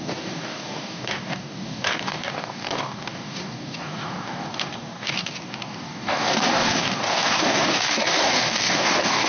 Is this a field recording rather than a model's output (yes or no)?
no